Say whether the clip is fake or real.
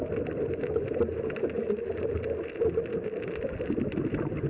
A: real